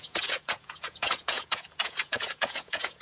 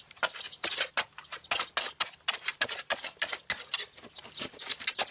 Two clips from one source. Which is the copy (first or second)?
first